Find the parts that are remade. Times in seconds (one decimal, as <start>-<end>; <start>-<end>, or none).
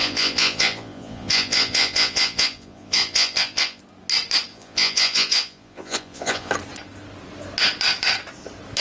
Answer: 0.0-3.8; 4.5-6.5